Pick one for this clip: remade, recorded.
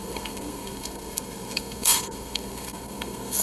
remade